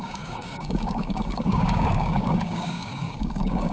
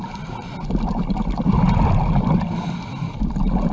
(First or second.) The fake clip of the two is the first